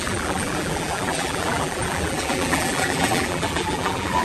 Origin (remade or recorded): remade